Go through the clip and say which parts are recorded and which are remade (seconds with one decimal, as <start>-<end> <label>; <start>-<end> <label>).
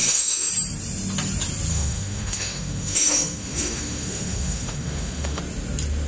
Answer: 0.0-0.5 remade; 0.5-1.7 recorded; 1.7-5.4 remade; 5.4-6.1 recorded